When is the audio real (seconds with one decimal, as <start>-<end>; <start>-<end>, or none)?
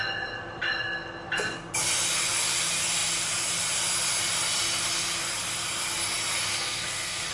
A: 0.0-6.5